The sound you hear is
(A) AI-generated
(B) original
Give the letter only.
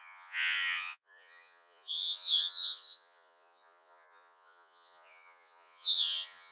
A